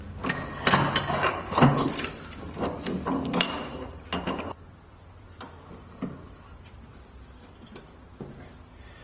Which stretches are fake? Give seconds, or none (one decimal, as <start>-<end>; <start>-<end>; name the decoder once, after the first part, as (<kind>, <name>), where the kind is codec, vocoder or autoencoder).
1.3-1.9 (codec, HILCodec)